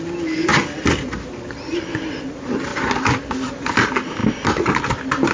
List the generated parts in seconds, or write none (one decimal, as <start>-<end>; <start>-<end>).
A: 0.0-0.5; 2.2-2.7; 3.2-4.2